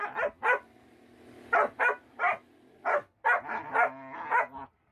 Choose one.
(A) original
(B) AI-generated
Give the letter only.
A